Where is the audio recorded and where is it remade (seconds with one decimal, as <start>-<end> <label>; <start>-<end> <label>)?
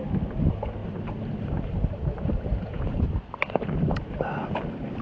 0.0-0.8 recorded; 0.8-3.8 remade; 3.8-5.0 recorded